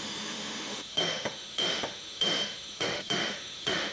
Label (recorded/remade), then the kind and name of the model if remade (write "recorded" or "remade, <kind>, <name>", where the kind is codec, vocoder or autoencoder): remade, autoencoder, DAC-VAE